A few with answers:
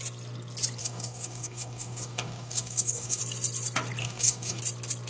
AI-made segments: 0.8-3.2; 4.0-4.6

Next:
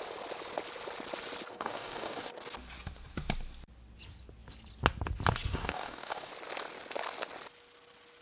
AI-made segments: 1.5-2.3; 5.6-6.3

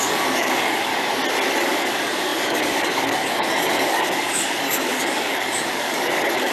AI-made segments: 0.0-0.9; 1.6-6.5

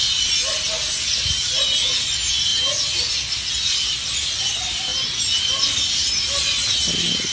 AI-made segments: none